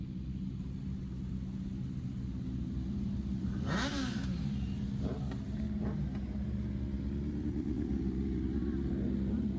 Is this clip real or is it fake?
real